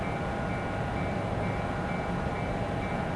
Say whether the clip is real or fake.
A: real